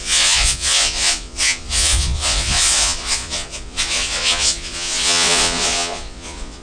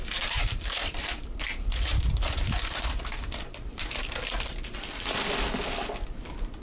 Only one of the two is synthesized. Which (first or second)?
first